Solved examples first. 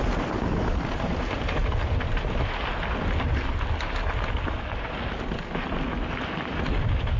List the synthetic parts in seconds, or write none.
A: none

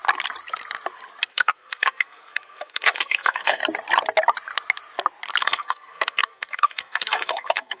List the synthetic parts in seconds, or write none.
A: 1.3-3.6; 5.4-7.8

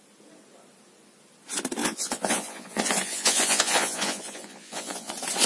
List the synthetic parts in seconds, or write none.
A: 1.8-5.1

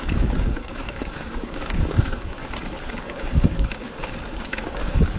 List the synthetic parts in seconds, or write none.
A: 0.0-2.4; 2.9-5.2